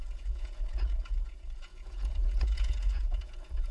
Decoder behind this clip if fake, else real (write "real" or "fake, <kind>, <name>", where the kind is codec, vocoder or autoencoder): fake, vocoder, Vocos